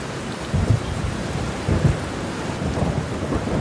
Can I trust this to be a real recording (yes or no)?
no